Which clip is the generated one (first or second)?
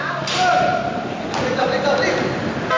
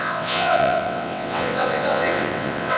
second